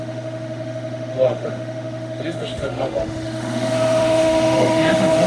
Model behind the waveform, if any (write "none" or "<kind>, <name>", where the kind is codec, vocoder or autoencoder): autoencoder, DAC-VAE